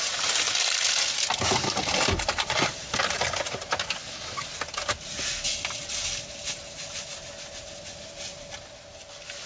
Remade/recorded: recorded